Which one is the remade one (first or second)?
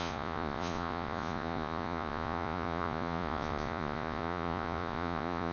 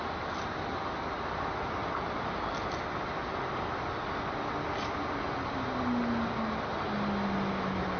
first